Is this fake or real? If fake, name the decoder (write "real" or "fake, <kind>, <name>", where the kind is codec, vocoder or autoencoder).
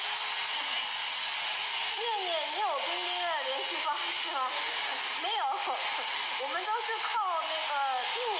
real